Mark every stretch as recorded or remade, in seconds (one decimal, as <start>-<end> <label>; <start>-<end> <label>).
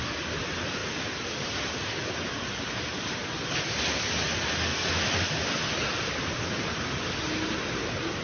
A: 0.0-0.8 recorded; 0.8-4.0 remade; 4.0-4.7 recorded; 4.7-7.2 remade; 7.2-8.2 recorded